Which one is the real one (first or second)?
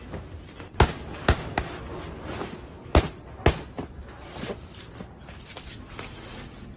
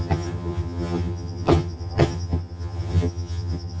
first